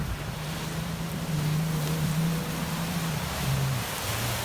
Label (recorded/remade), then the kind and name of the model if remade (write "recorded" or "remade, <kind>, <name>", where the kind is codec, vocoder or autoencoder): remade, vocoder, BigVGAN v2